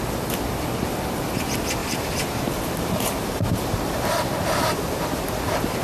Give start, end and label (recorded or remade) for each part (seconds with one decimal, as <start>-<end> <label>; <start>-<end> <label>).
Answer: 0.0-1.8 recorded; 1.8-5.3 remade; 5.3-5.8 recorded